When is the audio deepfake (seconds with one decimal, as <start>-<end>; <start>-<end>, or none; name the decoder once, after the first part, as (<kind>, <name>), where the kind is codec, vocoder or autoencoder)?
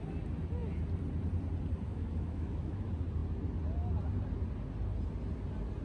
1.9-2.8 (autoencoder, DAC-VAE)